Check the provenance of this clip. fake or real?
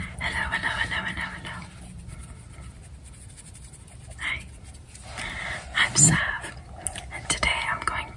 real